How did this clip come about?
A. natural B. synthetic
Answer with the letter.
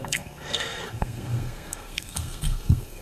B